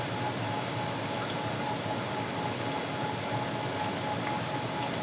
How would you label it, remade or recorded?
recorded